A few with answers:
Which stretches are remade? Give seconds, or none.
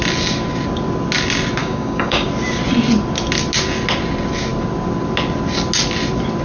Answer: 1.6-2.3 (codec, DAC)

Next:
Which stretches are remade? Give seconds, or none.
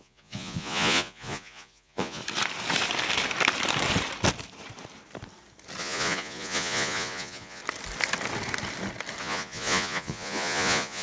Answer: 0.0-2.2 (vocoder, Vocos); 5.8-7.6; 9.2-11.0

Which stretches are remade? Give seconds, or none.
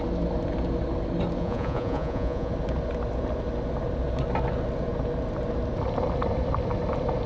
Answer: 1.4-2.5 (vocoder, Vocos)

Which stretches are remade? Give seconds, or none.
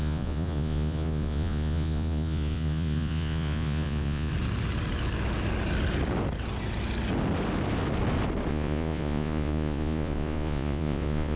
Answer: 0.0-4.3 (vocoder, Vocos); 8.5-11.4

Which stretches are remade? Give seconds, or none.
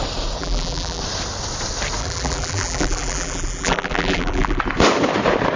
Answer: 0.4-1.0 (vocoder, BigVGAN v2); 2.0-4.6